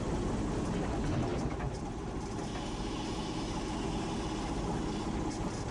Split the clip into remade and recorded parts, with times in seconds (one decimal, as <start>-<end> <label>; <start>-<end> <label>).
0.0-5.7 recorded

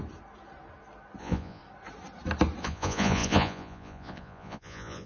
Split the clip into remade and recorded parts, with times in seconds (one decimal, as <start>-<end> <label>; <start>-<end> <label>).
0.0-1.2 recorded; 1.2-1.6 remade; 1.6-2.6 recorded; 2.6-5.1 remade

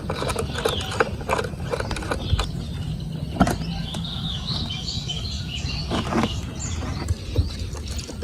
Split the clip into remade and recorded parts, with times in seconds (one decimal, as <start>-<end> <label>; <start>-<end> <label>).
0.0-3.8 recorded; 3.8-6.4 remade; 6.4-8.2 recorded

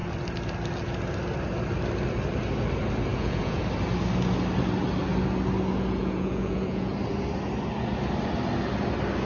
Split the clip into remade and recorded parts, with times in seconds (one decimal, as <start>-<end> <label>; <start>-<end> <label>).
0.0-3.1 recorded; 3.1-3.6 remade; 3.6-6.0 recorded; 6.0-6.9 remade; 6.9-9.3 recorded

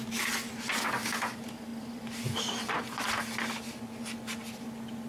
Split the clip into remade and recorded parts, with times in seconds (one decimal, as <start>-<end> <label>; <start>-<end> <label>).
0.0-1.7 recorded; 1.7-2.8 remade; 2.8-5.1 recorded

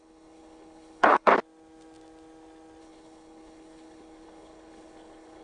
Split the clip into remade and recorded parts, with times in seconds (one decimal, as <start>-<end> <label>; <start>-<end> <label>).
0.0-1.3 remade; 1.3-2.8 recorded; 2.8-5.4 remade